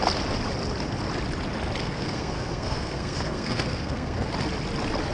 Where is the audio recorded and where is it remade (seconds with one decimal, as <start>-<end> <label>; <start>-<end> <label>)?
0.0-1.8 recorded; 1.8-4.3 remade; 4.3-5.1 recorded